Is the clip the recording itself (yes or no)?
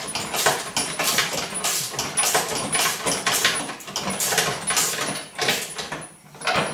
yes